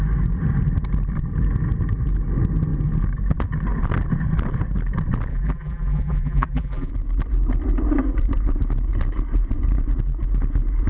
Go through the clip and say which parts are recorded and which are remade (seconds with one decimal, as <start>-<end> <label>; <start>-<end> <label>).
0.0-5.3 recorded; 5.3-6.9 remade; 6.9-10.9 recorded

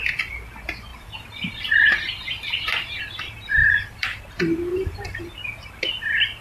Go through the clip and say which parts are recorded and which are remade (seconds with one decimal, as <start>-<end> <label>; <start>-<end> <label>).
0.0-0.9 recorded; 0.9-3.0 remade; 3.0-3.6 recorded; 3.6-4.2 remade; 4.2-4.7 recorded; 4.7-5.2 remade; 5.2-6.4 recorded

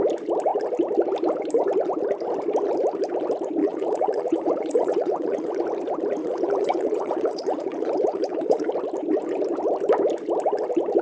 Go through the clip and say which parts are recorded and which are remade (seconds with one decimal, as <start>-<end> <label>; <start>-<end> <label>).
0.0-3.6 recorded; 3.6-5.5 remade; 5.5-6.2 recorded; 6.2-8.7 remade; 8.7-11.0 recorded

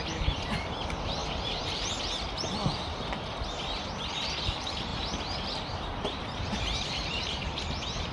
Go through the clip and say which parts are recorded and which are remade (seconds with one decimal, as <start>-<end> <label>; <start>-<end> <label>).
0.0-1.2 recorded; 1.2-1.9 remade; 1.9-4.9 recorded; 4.9-7.6 remade; 7.6-8.1 recorded

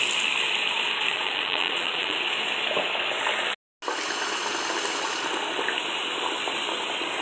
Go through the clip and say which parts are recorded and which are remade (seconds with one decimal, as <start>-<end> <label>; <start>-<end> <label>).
0.0-1.1 recorded; 1.1-2.2 remade; 2.2-7.2 recorded